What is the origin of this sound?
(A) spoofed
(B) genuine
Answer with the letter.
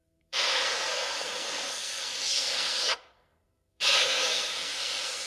A